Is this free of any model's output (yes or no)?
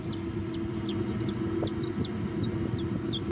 yes